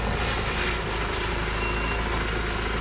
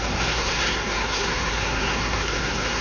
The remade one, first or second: second